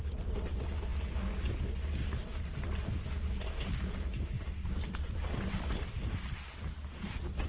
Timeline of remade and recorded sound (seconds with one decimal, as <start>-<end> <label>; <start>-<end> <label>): 0.0-7.5 recorded